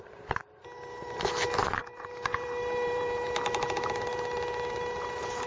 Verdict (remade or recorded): remade